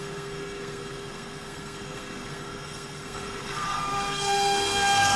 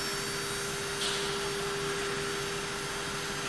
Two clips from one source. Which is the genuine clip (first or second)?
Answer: second